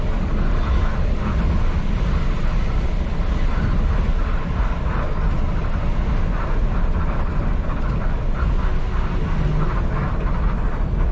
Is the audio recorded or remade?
recorded